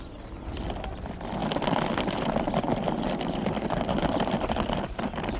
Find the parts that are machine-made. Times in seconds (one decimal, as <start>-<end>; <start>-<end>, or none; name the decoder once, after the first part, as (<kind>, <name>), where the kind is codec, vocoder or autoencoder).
none